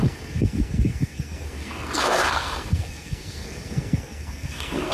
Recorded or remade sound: remade